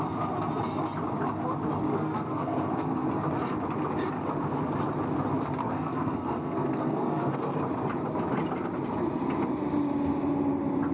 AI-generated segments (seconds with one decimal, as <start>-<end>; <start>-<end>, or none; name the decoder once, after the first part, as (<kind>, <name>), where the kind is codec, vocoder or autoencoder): 1.9-3.1 (codec, SNAC); 5.6-7.6